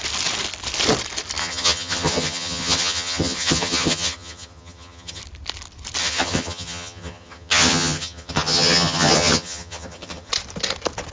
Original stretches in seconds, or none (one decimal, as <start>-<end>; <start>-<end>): 0.0-1.4; 5.2-6.0; 10.3-11.1